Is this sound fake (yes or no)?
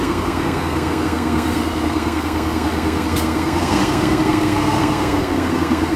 yes